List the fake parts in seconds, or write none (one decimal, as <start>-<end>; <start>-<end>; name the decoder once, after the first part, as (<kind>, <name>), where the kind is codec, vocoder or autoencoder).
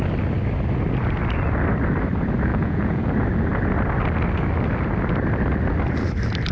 2.5-3.1 (vocoder, Vocos)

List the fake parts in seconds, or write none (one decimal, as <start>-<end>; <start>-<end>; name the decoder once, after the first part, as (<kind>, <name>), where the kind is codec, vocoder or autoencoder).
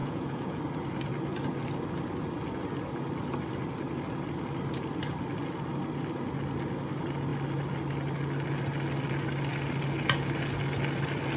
0.0-0.6 (vocoder, Vocos)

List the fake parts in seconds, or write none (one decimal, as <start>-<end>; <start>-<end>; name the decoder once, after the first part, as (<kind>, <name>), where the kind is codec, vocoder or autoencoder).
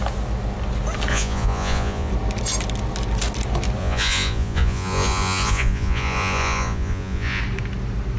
1.1-2.1 (vocoder, Vocos); 3.8-7.4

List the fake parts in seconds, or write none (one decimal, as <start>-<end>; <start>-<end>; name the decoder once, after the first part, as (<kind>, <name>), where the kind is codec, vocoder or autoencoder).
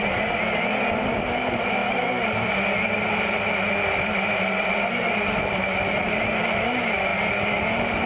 none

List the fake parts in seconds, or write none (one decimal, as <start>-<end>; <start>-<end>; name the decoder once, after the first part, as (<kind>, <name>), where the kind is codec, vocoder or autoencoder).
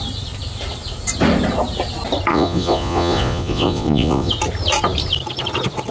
2.3-4.3 (vocoder, Vocos)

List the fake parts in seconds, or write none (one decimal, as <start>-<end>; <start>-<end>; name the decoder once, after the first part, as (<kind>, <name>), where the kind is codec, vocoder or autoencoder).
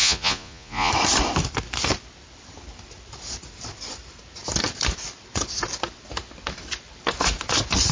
0.0-0.9 (vocoder, Vocos)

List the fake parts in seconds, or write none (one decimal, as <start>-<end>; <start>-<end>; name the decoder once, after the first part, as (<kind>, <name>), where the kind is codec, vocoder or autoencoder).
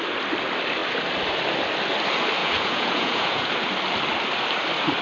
2.4-3.5 (vocoder, Vocos)